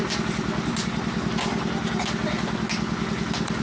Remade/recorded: recorded